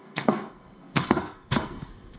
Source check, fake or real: fake